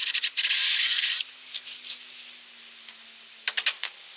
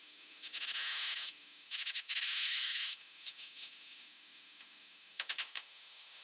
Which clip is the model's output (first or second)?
second